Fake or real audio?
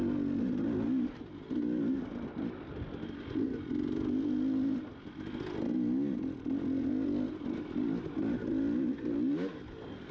real